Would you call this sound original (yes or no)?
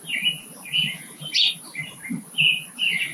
yes